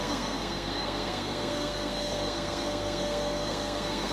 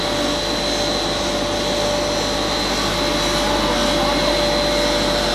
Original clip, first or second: second